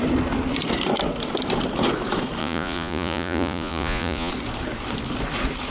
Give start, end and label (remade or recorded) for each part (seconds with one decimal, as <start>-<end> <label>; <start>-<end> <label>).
0.0-2.4 recorded; 2.4-4.3 remade; 4.3-5.7 recorded